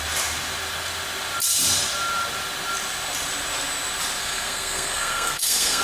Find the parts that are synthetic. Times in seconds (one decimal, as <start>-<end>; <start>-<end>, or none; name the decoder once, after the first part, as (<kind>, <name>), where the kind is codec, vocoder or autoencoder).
4.2-5.8 (codec, SNAC)